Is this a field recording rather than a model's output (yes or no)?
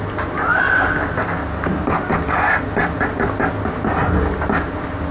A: yes